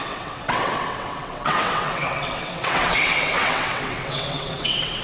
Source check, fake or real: fake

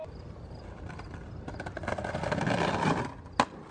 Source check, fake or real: real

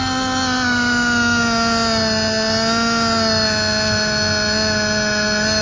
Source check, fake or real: real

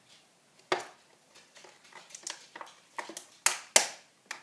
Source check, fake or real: real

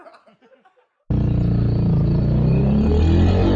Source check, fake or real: real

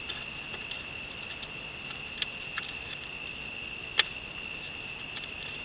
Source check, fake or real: real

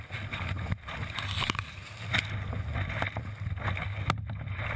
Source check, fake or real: real